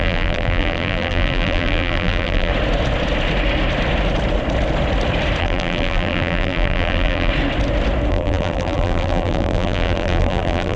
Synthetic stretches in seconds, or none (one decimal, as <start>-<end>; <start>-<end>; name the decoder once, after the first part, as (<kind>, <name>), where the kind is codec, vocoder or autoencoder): 0.0-2.5 (vocoder, BigVGAN v2); 5.4-7.3; 8.1-10.8